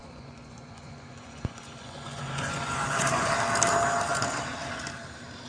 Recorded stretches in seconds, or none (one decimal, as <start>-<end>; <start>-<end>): 3.3-5.5